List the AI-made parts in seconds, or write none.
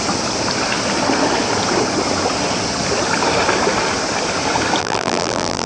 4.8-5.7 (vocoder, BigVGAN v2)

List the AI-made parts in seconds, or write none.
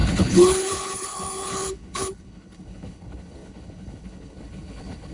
0.0-5.1 (codec, HILCodec)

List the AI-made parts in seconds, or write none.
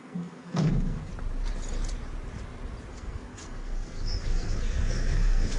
0.0-1.1 (codec, SNAC); 2.9-5.6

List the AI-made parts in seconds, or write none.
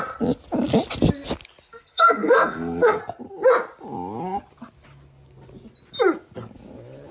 1.7-3.0 (codec, SNAC)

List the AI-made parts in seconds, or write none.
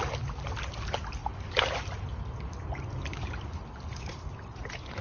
none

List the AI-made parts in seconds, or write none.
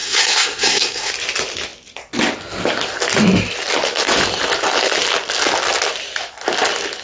0.0-1.1 (codec, SNAC)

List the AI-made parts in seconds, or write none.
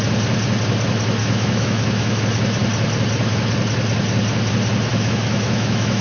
1.2-2.2 (autoencoder, DAC-VAE); 4.9-6.0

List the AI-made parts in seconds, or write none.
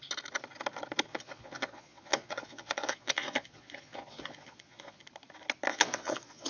1.1-5.0 (vocoder, Vocos); 5.7-6.5